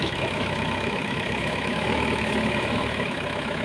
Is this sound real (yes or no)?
no